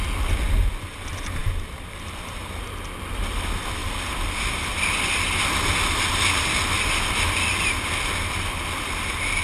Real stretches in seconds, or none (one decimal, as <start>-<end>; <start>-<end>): 0.0-1.4; 2.5-9.4